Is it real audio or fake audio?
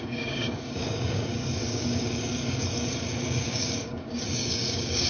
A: fake